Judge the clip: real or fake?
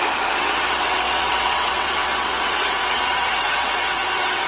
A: fake